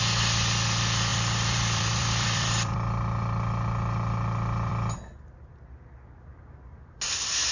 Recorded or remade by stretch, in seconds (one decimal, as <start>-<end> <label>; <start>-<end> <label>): 0.0-1.1 recorded; 1.1-4.7 remade; 4.7-7.5 recorded